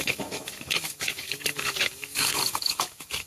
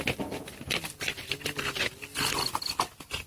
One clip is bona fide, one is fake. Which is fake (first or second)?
first